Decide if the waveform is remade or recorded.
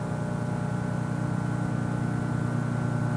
recorded